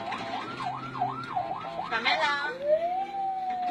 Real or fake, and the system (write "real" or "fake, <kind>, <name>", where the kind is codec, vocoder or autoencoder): real